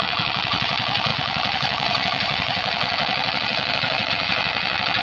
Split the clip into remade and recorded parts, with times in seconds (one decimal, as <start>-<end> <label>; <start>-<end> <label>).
0.0-5.0 remade